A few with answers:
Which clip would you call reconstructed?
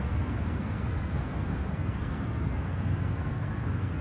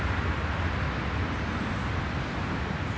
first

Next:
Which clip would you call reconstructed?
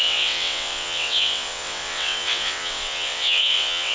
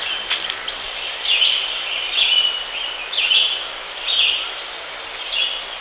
first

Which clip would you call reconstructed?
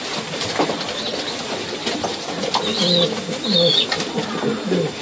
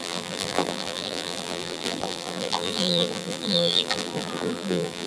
second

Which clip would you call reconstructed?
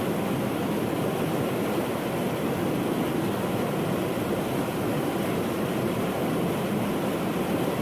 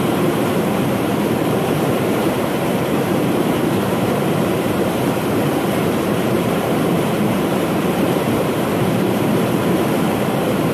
second